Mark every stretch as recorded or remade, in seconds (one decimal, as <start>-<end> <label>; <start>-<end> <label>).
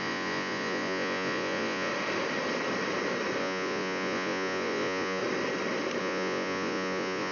0.0-1.9 remade; 1.9-3.4 recorded; 3.4-5.2 remade; 5.2-6.0 recorded; 6.0-7.3 remade